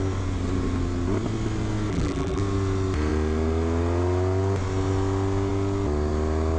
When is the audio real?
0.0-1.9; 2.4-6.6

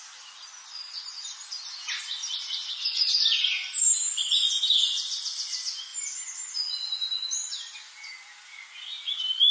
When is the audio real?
0.0-2.2; 2.7-5.9; 6.5-9.5